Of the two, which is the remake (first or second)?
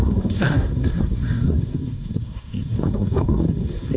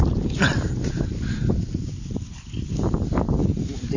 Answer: first